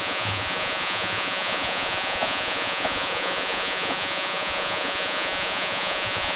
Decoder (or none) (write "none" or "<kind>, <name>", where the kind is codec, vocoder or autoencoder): vocoder, Vocos